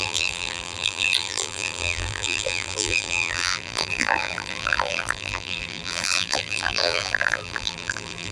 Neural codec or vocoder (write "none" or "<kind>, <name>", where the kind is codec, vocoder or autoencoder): vocoder, BigVGAN v2